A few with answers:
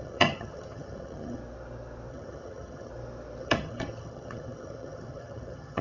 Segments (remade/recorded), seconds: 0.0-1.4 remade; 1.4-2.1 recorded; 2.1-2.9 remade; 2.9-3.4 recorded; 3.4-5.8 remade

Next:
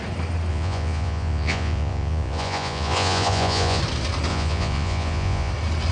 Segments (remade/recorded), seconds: 0.0-0.5 recorded; 0.5-3.8 remade; 3.8-4.3 recorded; 4.3-5.5 remade; 5.5-5.9 recorded

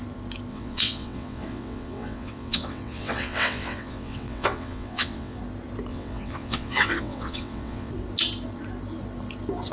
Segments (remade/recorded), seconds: 0.0-0.5 recorded; 0.5-5.4 remade; 5.4-5.9 recorded; 5.9-7.9 remade; 7.9-9.7 recorded